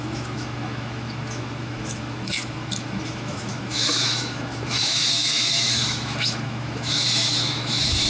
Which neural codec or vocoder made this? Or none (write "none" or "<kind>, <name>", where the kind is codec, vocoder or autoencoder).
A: autoencoder, DAC-VAE